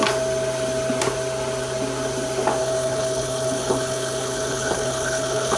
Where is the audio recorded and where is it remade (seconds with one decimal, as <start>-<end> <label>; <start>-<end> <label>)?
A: 0.0-2.6 recorded; 2.6-5.6 remade